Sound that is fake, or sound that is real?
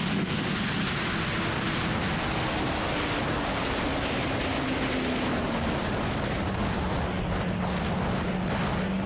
real